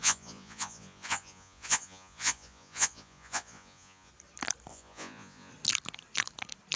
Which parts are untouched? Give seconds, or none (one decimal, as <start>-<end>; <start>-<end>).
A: 4.1-4.7; 5.5-6.8